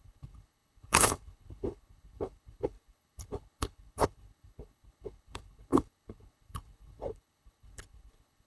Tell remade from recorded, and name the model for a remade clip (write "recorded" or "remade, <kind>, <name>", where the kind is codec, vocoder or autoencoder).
remade, codec, HILCodec